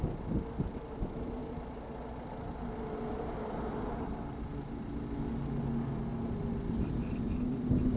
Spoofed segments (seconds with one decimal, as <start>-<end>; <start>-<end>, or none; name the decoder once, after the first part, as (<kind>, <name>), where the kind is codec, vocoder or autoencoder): 1.4-4.2 (vocoder, BigVGAN v2)